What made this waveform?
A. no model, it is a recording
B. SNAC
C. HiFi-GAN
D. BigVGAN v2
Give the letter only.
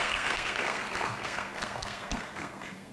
B